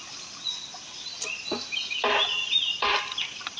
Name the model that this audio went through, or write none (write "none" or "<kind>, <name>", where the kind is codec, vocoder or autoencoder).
none